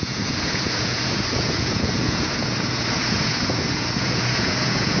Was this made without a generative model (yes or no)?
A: no